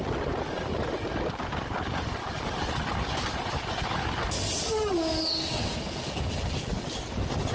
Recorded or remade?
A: recorded